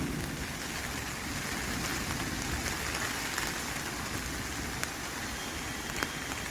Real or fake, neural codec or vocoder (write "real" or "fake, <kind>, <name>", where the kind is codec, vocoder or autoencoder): real